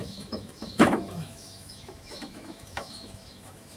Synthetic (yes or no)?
yes